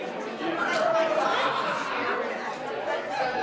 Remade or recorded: recorded